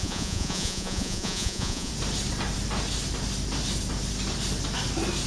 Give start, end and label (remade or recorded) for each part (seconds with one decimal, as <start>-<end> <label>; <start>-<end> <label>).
0.0-1.9 remade; 1.9-5.3 recorded